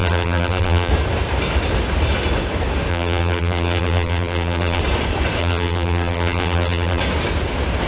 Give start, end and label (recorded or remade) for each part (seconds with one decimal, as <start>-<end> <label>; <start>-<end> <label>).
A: 0.0-0.9 remade; 0.9-2.9 recorded; 2.9-4.8 remade; 4.8-5.4 recorded; 5.4-7.0 remade; 7.0-7.9 recorded